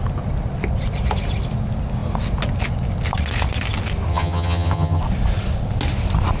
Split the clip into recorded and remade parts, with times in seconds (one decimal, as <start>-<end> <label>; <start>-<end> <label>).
0.0-4.1 recorded; 4.1-5.0 remade; 5.0-6.4 recorded